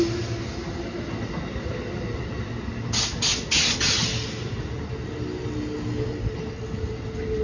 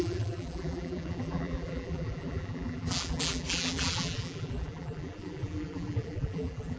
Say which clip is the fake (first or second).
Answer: second